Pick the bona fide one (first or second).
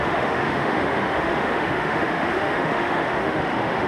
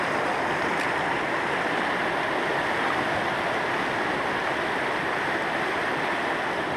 second